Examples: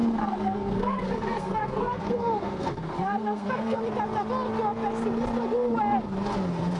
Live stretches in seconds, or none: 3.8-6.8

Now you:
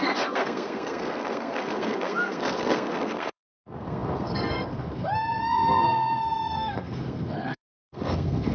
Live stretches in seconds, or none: none

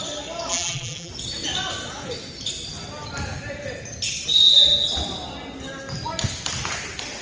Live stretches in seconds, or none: 0.0-0.5; 1.1-7.2

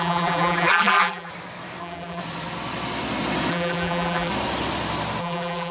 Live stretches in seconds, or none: 1.3-1.8; 2.2-3.5; 4.3-5.2

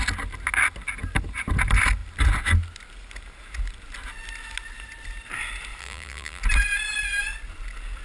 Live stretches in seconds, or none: 0.0-5.8; 6.4-8.0

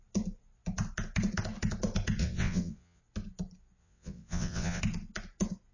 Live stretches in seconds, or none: 0.0-2.2; 3.0-3.8; 4.8-5.7